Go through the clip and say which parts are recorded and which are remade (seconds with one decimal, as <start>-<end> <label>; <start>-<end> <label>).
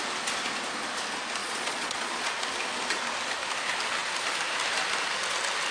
0.0-1.4 recorded; 1.4-2.4 remade; 2.4-5.7 recorded